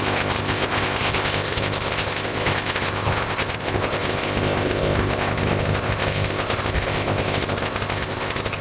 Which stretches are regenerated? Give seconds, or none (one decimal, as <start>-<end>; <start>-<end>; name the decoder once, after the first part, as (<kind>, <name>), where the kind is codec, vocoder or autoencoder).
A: 0.0-8.6 (codec, ZipCodec)